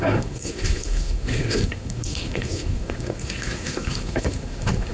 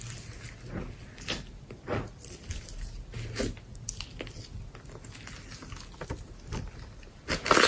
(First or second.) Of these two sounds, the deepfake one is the first